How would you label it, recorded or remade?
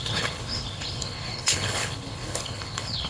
remade